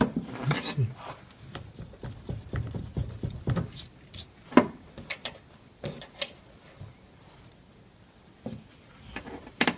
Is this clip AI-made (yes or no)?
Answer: yes